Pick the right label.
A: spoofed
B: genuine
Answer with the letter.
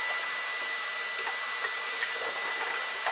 B